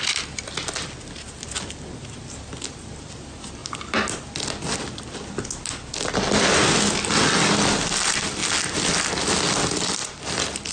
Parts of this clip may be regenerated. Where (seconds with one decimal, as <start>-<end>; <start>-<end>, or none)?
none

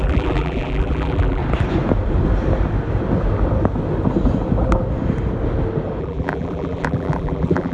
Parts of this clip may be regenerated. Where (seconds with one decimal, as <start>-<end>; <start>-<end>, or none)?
0.0-1.4; 6.0-7.7

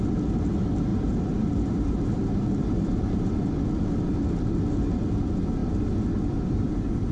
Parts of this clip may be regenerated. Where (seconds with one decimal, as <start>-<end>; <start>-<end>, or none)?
0.9-3.3

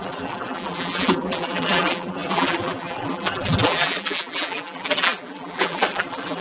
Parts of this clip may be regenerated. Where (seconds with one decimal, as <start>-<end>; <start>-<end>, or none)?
0.0-6.4